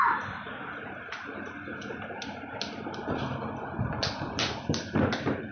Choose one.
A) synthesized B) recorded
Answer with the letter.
B